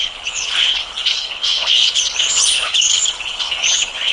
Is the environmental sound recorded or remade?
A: remade